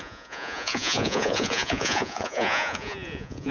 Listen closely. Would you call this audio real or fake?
fake